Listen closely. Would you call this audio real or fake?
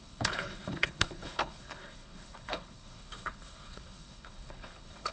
fake